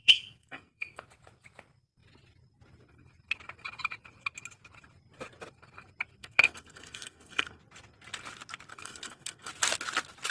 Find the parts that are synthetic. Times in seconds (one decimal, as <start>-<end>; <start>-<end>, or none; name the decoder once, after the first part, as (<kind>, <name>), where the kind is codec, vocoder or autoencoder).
0.0-1.0 (codec, SNAC); 6.2-7.6; 8.7-9.5